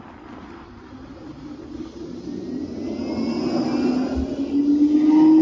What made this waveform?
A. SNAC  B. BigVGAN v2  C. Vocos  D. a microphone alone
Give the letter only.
D